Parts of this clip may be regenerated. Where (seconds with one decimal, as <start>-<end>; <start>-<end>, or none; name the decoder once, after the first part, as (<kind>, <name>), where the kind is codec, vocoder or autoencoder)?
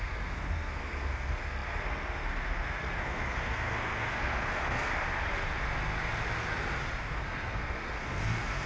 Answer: 0.0-4.9 (codec, SNAC); 7.0-8.7